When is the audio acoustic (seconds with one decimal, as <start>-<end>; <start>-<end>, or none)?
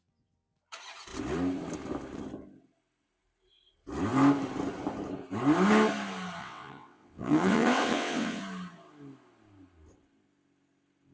0.0-6.4; 8.4-11.1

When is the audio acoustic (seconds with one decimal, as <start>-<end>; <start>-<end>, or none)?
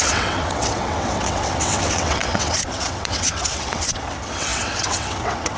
none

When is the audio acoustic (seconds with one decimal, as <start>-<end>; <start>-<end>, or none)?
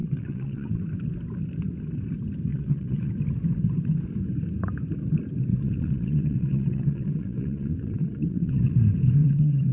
0.8-2.5; 3.1-5.5; 8.7-9.2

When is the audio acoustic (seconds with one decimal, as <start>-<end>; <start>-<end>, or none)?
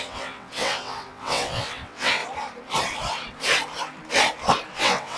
2.2-4.7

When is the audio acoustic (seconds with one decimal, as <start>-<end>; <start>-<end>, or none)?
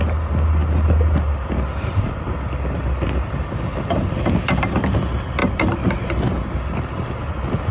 0.0-7.7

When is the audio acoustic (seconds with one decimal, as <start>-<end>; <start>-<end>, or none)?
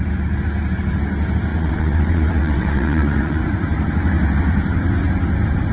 0.0-1.5; 3.4-5.7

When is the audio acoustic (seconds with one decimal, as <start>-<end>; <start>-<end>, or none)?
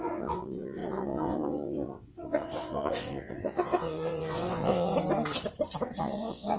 4.9-6.0